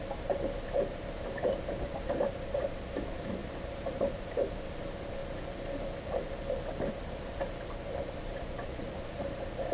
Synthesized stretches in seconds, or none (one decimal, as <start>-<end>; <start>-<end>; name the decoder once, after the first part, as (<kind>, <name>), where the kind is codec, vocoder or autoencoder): 0.0-5.2 (vocoder, BigVGAN v2); 6.9-9.7